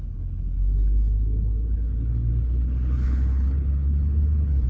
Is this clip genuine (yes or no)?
no